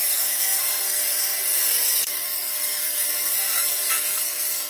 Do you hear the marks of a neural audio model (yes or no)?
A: yes